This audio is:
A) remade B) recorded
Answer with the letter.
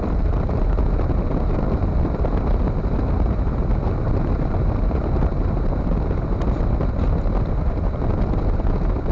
B